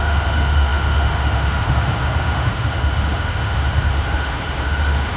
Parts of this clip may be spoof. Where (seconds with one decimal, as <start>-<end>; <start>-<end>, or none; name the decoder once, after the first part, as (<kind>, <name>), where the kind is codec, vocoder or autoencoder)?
0.0-5.2 (autoencoder, DAC-VAE)